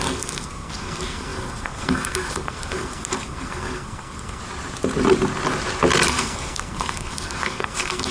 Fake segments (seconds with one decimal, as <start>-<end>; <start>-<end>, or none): 0.0-4.4; 6.1-8.1